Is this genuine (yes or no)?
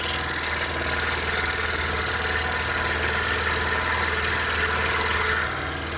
yes